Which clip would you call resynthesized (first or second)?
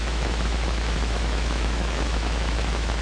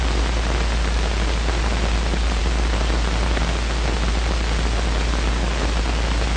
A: first